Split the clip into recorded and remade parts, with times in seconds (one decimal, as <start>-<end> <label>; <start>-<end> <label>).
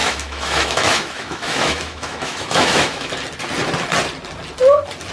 0.0-3.1 remade; 3.1-5.1 recorded